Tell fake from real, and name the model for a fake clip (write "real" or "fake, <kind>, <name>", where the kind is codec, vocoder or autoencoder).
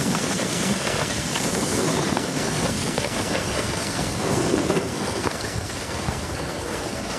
fake, codec, SNAC